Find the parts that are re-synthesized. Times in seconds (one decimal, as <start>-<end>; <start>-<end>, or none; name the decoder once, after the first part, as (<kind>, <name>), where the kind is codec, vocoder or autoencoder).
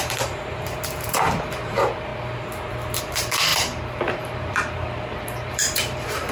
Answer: 0.0-2.1 (vocoder, BigVGAN v2); 3.0-6.3